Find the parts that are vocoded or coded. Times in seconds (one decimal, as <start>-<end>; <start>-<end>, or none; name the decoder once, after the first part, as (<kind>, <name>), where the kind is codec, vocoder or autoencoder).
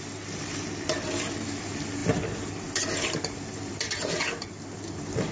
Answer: 2.0-5.3 (vocoder, BigVGAN v2)